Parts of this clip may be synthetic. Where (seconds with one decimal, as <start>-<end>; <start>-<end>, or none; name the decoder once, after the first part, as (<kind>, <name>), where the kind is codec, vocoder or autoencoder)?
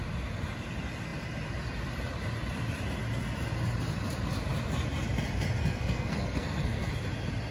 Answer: 5.6-6.9 (codec, SNAC)